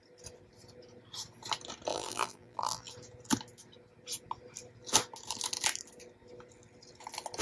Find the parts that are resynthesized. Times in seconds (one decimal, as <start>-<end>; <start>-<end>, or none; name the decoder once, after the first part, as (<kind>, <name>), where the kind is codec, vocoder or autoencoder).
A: 1.9-2.9 (vocoder, BigVGAN v2)